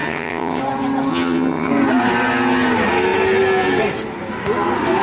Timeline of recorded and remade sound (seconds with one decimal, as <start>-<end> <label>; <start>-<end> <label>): 0.0-0.6 remade; 0.6-1.1 recorded; 1.1-1.7 remade; 1.7-5.0 recorded